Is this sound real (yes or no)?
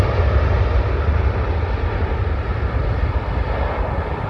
yes